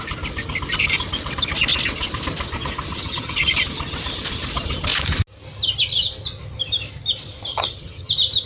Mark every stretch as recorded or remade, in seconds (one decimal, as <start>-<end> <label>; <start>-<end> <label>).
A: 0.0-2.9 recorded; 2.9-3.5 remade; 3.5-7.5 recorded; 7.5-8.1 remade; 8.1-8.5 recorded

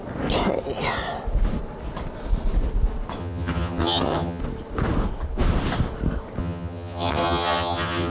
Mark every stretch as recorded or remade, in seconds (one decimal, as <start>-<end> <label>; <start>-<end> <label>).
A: 0.0-3.2 recorded; 3.2-4.4 remade; 4.4-6.4 recorded; 6.4-8.1 remade

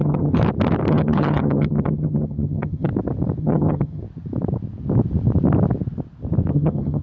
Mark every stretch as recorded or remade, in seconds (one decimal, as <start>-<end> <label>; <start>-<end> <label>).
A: 0.0-0.4 remade; 0.4-0.9 recorded; 0.9-2.9 remade; 2.9-3.4 recorded; 3.4-4.0 remade; 4.0-6.5 recorded; 6.5-7.0 remade

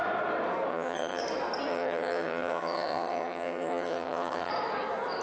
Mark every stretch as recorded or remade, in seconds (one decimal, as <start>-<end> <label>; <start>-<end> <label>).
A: 0.0-0.7 recorded; 0.7-1.2 remade; 1.2-1.7 recorded; 1.7-4.5 remade; 4.5-5.2 recorded